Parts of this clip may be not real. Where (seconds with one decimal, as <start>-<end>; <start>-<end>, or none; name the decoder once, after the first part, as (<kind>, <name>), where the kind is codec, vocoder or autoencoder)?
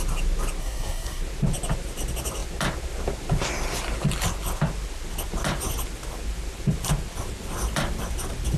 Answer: 0.6-1.2 (codec, SNAC)